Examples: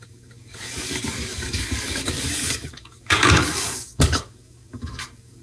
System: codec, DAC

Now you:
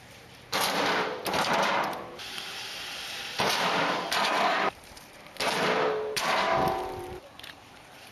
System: vocoder, BigVGAN v2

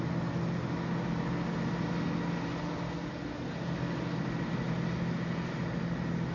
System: none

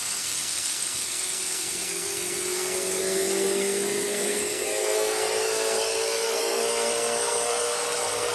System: codec, SNAC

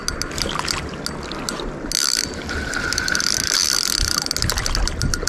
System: none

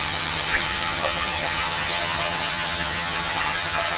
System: vocoder, HiFi-GAN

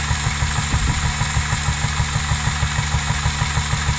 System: none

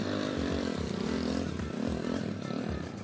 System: vocoder, BigVGAN v2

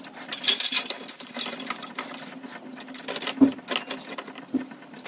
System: none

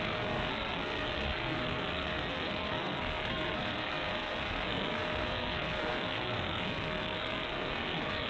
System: codec, SNAC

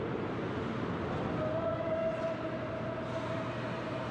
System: none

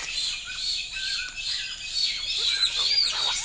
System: none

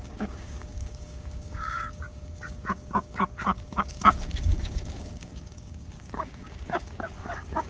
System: codec, DAC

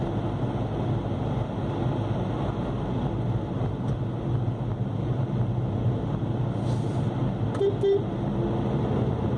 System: none